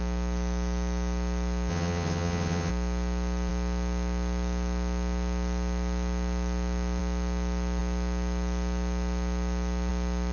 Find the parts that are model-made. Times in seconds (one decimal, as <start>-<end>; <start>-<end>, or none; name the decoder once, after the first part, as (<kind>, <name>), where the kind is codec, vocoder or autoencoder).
1.7-2.7 (vocoder, HiFi-GAN)